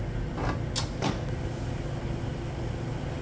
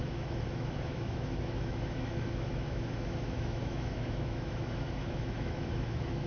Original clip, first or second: first